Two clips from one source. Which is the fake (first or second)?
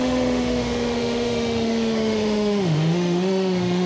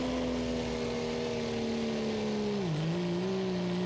first